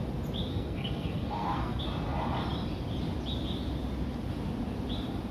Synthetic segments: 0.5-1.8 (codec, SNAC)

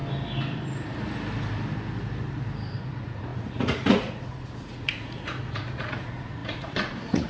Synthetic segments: 2.8-7.3 (vocoder, Vocos)

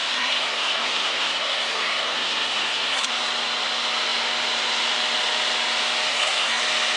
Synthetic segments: 0.0-3.1 (codec, SNAC); 6.1-6.6

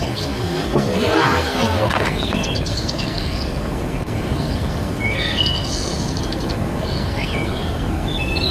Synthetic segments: 0.0-8.5 (codec, SNAC)

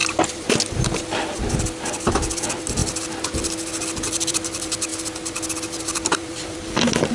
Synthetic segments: 0.0-2.8 (vocoder, BigVGAN v2); 4.0-4.9; 5.8-7.1